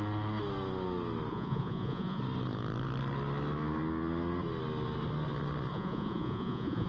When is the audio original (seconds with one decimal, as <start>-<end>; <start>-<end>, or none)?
0.0-1.3; 2.2-5.7